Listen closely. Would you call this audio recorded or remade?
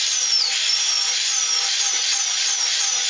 recorded